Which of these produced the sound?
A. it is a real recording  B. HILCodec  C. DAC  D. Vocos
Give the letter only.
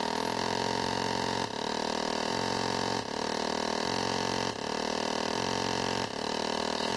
A